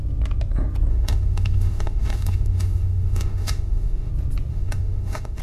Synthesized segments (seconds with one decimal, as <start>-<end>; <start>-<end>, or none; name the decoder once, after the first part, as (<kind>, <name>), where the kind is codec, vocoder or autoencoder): 0.9-4.1 (autoencoder, DAC-VAE); 4.5-5.4